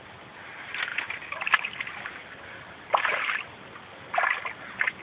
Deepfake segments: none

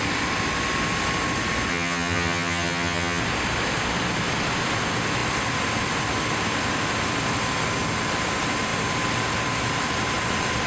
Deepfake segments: 1.7-3.2 (vocoder, HiFi-GAN)

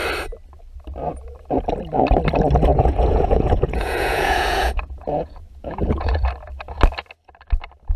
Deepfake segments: 2.7-6.3 (vocoder, Vocos)

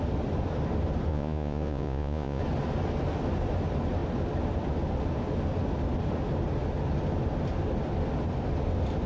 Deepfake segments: 1.1-2.4 (vocoder, Vocos)

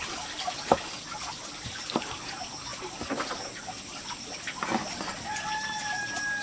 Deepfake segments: none

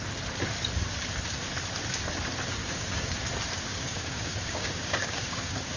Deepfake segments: 2.6-3.1 (codec, DAC); 3.7-5.8

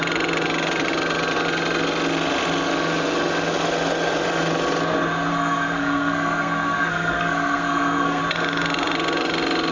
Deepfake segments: 5.3-8.2 (codec, SNAC)